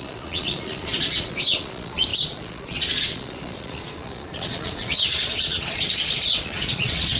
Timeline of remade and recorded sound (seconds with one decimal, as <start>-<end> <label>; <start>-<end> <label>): 0.0-7.2 remade